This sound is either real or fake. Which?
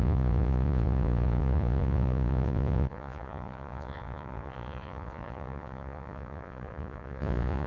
fake